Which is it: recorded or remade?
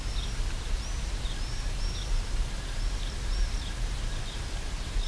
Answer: recorded